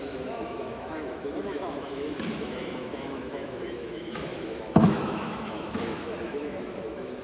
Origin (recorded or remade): remade